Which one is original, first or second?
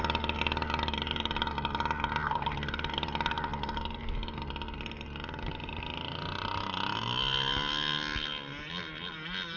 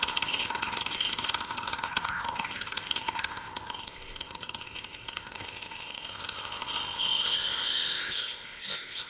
first